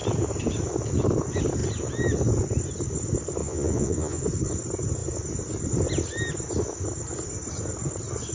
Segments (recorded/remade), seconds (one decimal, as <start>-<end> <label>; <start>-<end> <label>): 0.0-3.4 recorded; 3.4-4.2 remade; 4.2-8.3 recorded

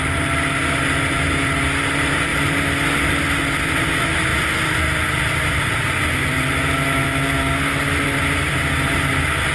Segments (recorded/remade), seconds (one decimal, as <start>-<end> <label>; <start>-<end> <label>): 0.0-9.5 recorded

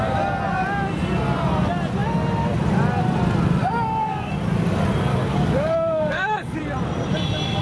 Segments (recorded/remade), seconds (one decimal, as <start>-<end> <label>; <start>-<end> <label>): 0.0-3.6 recorded; 3.6-4.3 remade; 4.3-5.1 recorded; 5.1-6.6 remade; 6.6-7.6 recorded